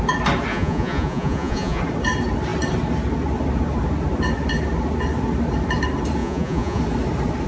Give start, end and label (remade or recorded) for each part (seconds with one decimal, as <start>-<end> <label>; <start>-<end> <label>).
0.0-0.5 recorded; 0.5-1.8 remade; 1.8-6.2 recorded; 6.2-6.8 remade; 6.8-7.5 recorded

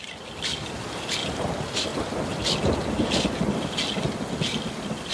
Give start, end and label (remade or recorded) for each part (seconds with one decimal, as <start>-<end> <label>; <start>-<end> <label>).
0.0-5.1 recorded

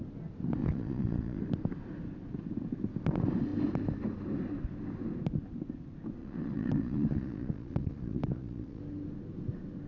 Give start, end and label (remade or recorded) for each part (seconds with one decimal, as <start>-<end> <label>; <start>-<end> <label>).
0.0-0.6 recorded; 0.6-1.4 remade; 1.4-6.2 recorded; 6.2-8.8 remade; 8.8-9.9 recorded

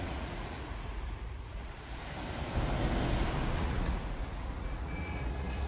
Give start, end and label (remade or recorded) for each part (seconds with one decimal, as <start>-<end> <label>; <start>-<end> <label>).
0.0-2.0 remade; 2.0-3.6 recorded; 3.6-5.7 remade

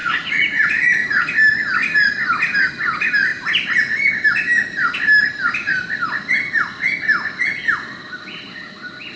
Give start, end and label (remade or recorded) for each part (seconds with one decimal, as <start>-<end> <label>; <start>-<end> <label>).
0.0-1.3 remade; 1.3-9.2 recorded

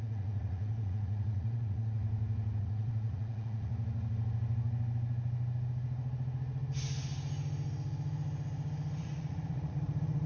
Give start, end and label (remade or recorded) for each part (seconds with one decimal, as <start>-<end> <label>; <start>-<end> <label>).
0.0-2.0 remade; 2.0-2.6 recorded; 2.6-3.7 remade; 3.7-9.0 recorded; 9.0-10.3 remade